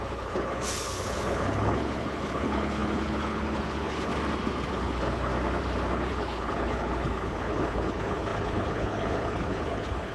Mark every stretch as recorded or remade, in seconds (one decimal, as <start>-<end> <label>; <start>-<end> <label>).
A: 0.0-4.1 remade; 4.1-4.7 recorded; 4.7-5.3 remade; 5.3-5.9 recorded; 5.9-10.1 remade